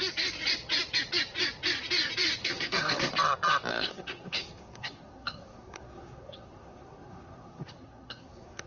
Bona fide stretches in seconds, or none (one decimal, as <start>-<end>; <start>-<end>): 0.0-2.4; 3.1-3.7